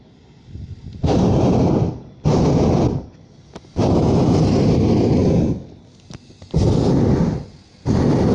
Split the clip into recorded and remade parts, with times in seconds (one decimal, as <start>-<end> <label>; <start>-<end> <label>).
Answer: 0.0-8.3 recorded